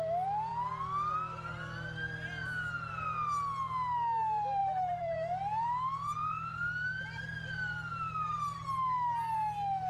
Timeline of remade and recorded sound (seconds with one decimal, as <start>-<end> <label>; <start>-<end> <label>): 0.0-4.6 recorded; 4.6-8.1 remade; 8.1-9.9 recorded